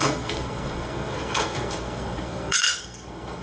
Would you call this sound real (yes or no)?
no